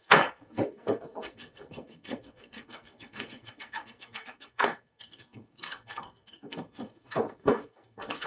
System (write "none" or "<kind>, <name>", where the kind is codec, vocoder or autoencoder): codec, SNAC